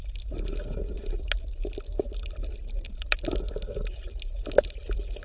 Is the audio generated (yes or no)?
no